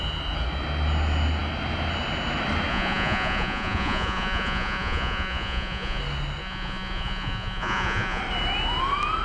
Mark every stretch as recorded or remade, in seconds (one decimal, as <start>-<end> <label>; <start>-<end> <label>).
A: 0.0-2.7 recorded; 2.7-6.0 remade; 6.0-6.4 recorded; 6.4-8.2 remade; 8.2-9.2 recorded